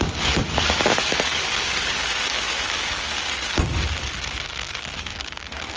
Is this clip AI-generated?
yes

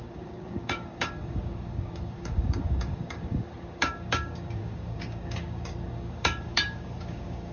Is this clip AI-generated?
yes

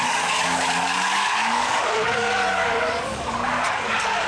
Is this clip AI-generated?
yes